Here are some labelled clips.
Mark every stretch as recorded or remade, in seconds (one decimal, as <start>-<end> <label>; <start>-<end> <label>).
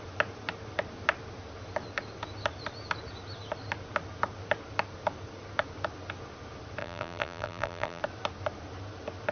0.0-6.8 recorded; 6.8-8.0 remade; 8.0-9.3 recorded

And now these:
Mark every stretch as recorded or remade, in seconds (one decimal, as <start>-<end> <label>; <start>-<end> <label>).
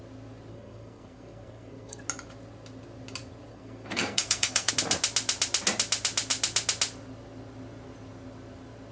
0.0-0.5 recorded; 0.5-2.0 remade; 2.0-3.5 recorded; 3.5-4.7 remade; 4.7-8.9 recorded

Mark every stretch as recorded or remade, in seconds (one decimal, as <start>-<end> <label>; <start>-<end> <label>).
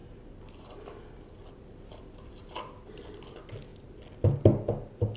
0.0-5.2 recorded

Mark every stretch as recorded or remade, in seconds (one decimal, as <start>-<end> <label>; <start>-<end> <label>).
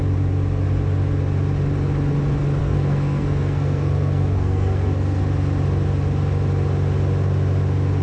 0.0-2.6 recorded; 2.6-5.2 remade; 5.2-8.0 recorded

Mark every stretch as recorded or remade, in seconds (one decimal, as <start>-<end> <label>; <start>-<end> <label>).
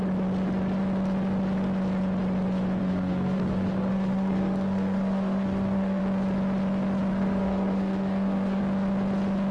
0.0-2.8 recorded; 2.8-6.0 remade; 6.0-7.1 recorded; 7.1-8.6 remade; 8.6-9.5 recorded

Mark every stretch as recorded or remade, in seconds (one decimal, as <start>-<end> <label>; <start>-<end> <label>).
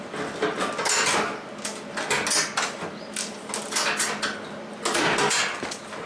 0.0-6.1 recorded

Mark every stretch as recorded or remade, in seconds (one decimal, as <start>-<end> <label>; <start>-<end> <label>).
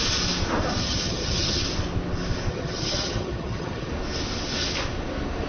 0.0-0.8 recorded; 0.8-1.6 remade; 1.6-2.5 recorded; 2.5-3.9 remade; 3.9-5.5 recorded